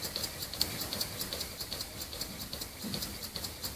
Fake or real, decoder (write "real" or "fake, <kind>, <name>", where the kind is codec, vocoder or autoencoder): real